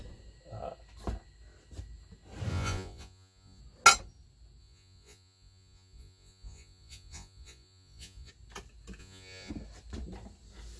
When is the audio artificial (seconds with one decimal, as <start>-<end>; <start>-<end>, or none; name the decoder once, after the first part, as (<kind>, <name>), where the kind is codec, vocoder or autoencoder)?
2.5-3.6 (vocoder, Vocos); 4.6-8.3; 9.0-9.5

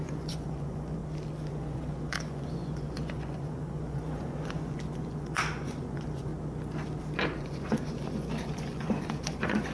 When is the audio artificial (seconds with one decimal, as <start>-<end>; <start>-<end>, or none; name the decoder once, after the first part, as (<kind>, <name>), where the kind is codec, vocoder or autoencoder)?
0.0-1.0 (vocoder, Vocos); 1.5-6.3; 7.4-9.7

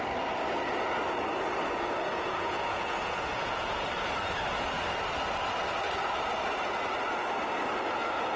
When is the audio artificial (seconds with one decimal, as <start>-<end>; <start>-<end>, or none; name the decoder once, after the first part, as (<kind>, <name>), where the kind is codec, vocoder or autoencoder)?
2.1-3.9 (vocoder, Vocos)

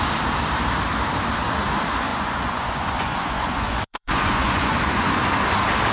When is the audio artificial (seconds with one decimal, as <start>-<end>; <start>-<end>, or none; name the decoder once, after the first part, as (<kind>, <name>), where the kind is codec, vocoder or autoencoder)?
2.1-5.2 (vocoder, Vocos)

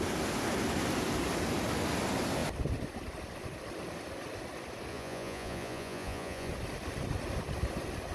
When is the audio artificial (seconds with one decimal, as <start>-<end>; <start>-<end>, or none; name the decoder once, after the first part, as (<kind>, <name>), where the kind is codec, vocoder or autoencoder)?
4.9-6.5 (vocoder, Vocos)

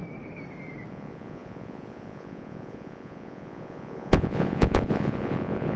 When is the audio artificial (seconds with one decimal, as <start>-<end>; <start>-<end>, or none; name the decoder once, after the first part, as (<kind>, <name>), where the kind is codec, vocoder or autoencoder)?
0.9-5.8 (vocoder, Vocos)

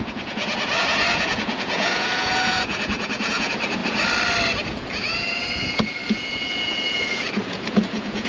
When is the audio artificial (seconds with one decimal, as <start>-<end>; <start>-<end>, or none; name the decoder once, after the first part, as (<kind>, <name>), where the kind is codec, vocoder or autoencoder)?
0.0-3.8 (vocoder, Vocos); 4.7-8.3